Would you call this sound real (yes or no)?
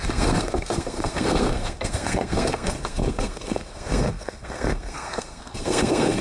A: no